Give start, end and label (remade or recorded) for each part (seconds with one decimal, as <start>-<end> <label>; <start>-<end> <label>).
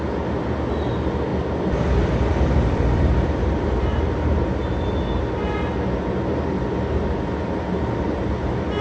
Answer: 0.0-1.3 recorded; 1.3-4.6 remade; 4.6-8.8 recorded